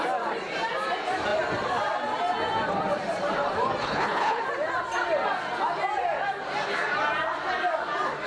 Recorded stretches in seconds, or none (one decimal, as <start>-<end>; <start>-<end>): 0.0-3.8; 4.4-8.3